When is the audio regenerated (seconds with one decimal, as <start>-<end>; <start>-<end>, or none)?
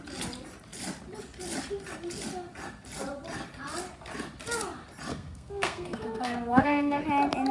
5.1-7.0